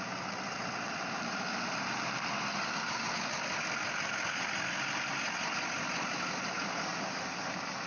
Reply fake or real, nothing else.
real